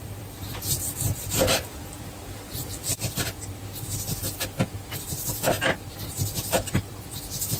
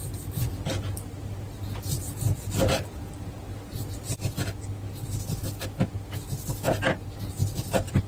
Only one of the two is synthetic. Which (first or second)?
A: first